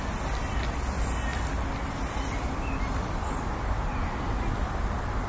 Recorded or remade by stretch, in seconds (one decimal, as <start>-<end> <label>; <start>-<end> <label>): 0.0-5.3 recorded